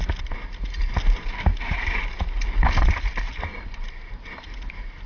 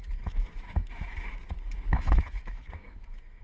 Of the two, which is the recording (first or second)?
first